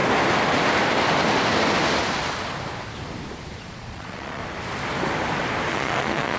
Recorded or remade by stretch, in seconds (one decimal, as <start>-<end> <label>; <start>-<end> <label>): 0.0-3.6 recorded; 3.6-4.4 remade; 4.4-5.7 recorded; 5.7-6.4 remade